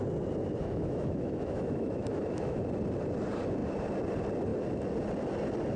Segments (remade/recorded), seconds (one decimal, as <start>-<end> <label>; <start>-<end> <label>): 0.0-0.6 recorded; 0.6-2.6 remade; 2.6-5.8 recorded